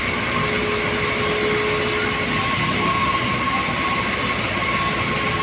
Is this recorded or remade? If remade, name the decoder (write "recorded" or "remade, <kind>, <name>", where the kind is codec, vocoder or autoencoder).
recorded